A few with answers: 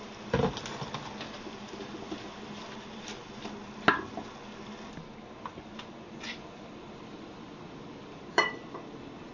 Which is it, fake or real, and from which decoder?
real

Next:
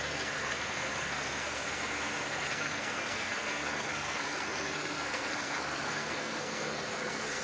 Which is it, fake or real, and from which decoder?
fake, codec, SNAC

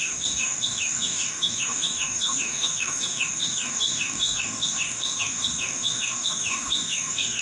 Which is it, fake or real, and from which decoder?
fake, codec, DAC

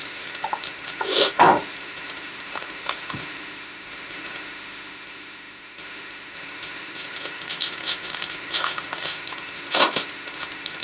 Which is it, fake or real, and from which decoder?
fake, autoencoder, DAC-VAE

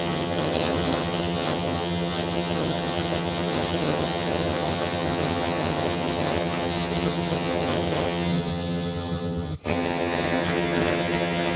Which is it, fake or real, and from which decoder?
fake, vocoder, HiFi-GAN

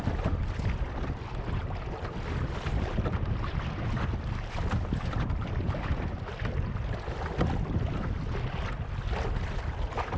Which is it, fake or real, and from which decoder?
real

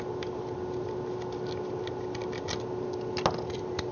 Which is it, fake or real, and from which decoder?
real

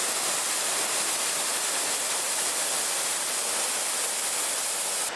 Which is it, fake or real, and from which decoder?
real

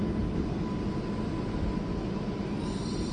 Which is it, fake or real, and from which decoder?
real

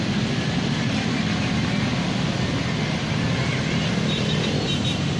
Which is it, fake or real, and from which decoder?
fake, vocoder, BigVGAN v2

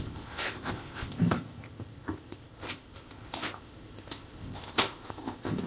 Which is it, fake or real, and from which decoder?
fake, codec, ZipCodec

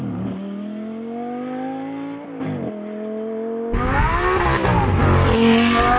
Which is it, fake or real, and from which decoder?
real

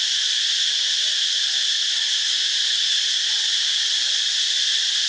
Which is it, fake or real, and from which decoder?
real